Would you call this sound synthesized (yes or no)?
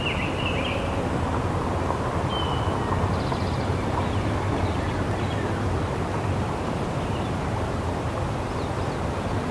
no